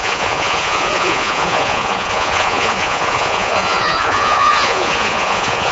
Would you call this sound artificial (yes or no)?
yes